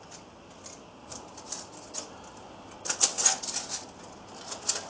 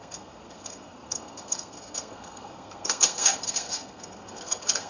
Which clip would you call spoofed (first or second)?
second